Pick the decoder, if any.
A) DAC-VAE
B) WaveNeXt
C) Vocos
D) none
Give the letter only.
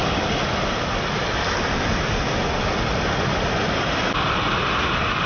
D